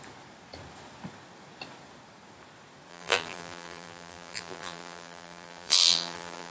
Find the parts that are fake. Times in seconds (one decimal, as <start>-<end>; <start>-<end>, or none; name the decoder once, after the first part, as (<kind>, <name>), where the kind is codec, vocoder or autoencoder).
2.9-6.5 (vocoder, BigVGAN v2)